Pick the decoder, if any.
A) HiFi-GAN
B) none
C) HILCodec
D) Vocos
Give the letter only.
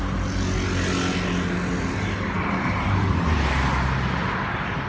B